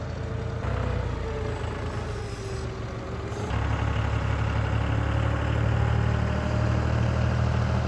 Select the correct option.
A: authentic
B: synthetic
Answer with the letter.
A